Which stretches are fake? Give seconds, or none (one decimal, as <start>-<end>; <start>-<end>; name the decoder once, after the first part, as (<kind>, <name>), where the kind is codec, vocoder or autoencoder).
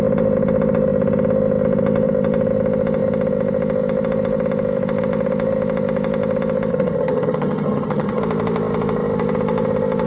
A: 6.7-8.2 (vocoder, HiFi-GAN)